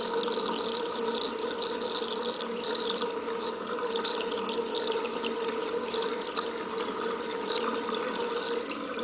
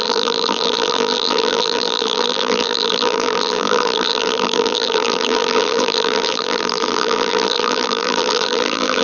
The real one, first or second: first